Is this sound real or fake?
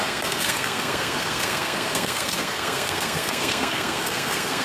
fake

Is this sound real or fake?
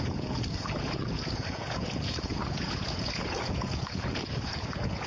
fake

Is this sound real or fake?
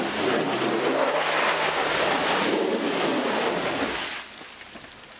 real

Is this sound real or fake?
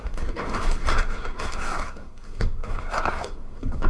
fake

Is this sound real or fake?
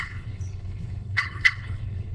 fake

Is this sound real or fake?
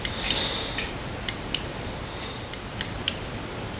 real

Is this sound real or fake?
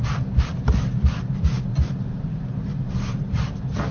fake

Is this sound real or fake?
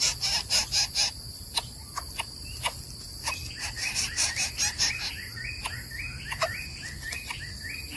real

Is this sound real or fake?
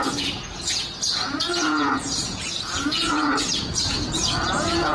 fake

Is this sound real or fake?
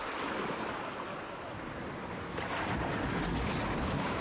real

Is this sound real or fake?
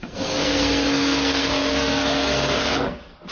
fake